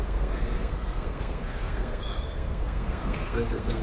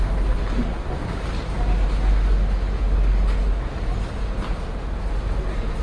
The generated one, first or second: first